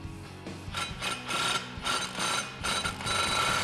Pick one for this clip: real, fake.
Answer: real